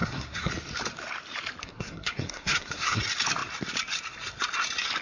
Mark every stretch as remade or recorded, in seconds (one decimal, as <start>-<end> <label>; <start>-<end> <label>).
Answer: 0.0-0.5 remade; 0.5-1.6 recorded; 1.6-3.0 remade; 3.0-5.0 recorded